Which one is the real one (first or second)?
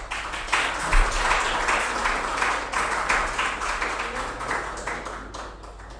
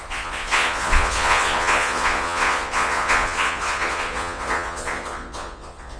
first